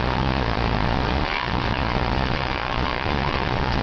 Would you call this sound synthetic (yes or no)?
yes